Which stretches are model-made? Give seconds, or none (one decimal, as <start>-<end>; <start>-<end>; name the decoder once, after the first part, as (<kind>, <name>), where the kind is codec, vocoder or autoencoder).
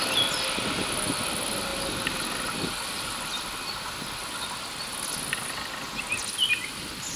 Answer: none